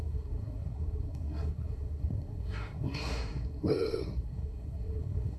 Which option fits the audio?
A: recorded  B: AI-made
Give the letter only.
B